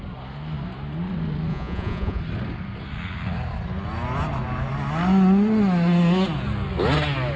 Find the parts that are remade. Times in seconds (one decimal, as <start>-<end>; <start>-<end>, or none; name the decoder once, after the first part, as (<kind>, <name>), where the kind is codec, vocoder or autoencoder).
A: 1.5-2.2 (vocoder, Vocos)